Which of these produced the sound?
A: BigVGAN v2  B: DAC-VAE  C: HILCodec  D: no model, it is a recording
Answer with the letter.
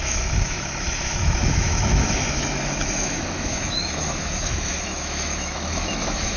B